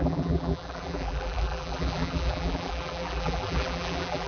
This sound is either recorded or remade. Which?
remade